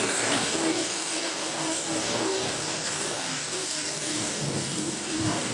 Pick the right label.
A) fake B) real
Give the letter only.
A